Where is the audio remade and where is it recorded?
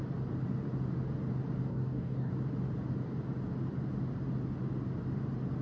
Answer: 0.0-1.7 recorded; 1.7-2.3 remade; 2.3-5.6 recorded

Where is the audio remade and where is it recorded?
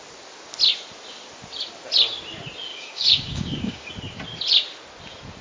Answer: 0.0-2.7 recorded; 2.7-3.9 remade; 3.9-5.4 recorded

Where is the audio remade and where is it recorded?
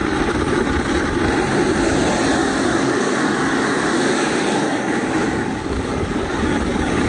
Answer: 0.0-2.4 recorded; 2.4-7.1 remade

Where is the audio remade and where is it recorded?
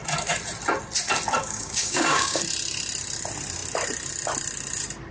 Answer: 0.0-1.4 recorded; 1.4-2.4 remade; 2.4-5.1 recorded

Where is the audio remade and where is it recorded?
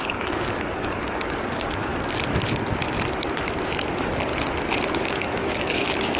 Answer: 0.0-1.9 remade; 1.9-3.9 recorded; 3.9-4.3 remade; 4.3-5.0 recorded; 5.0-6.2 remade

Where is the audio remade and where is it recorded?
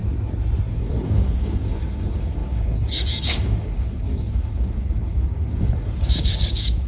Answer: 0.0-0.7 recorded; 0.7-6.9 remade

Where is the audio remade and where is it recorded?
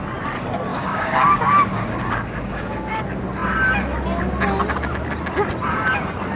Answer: 0.0-0.7 recorded; 0.7-3.0 remade; 3.0-6.4 recorded